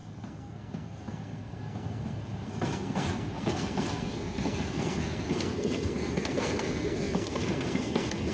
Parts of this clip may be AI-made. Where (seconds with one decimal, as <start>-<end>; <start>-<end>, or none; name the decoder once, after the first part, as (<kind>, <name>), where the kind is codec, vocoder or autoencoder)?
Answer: 0.0-8.3 (codec, SNAC)